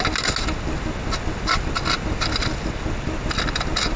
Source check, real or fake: real